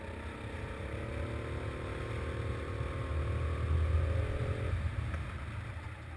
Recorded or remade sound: recorded